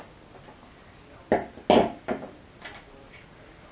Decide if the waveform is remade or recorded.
recorded